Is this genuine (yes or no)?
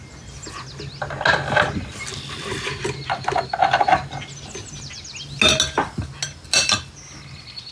yes